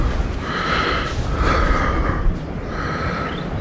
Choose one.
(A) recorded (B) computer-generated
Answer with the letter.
A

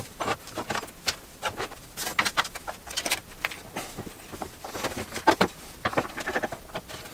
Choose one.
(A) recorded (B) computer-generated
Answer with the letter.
A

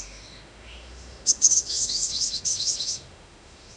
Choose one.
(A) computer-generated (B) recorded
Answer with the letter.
A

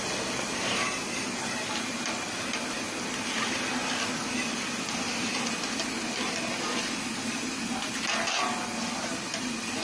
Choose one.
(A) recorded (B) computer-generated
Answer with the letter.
A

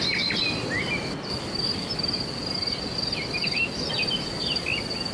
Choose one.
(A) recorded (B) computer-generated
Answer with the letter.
A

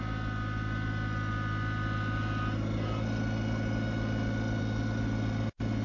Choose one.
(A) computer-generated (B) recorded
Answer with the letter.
B